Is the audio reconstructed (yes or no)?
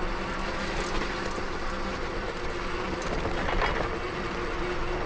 no